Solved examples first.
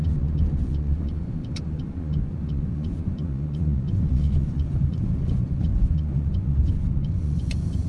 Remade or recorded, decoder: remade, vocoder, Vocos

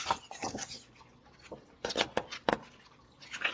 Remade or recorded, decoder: recorded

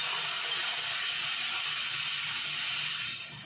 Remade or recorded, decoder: recorded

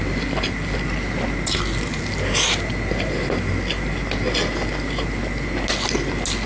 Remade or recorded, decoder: recorded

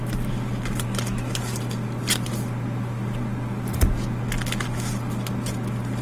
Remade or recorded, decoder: recorded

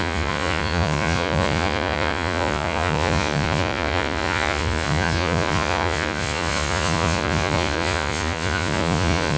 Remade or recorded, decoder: remade, vocoder, Vocos